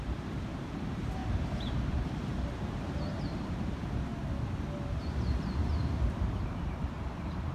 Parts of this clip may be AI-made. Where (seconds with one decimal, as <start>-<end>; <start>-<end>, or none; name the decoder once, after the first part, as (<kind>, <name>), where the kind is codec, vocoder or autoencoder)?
0.0-4.1 (vocoder, BigVGAN v2); 5.0-5.6; 6.2-7.5